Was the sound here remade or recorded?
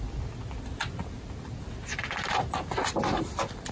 recorded